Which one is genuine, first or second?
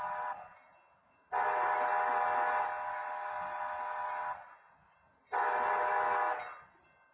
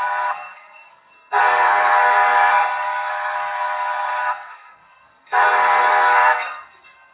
first